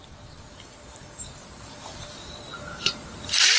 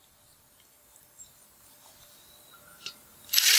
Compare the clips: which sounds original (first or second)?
second